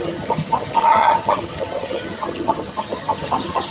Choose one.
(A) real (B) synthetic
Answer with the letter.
B